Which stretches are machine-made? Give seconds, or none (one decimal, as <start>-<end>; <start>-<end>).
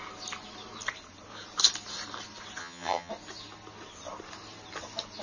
2.6-3.1